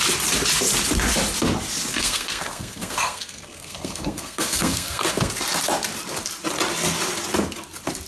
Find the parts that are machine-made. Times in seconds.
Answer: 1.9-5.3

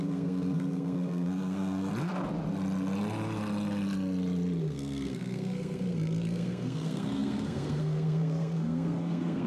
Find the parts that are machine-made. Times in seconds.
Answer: 0.0-1.9; 4.6-9.5

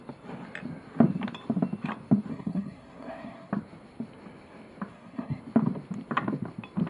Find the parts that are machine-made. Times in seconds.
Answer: 2.3-3.5; 4.9-5.4

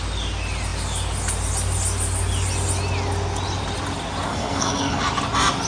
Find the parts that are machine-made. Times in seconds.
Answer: 4.3-5.0